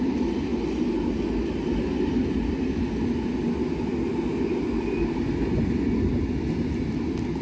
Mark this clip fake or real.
real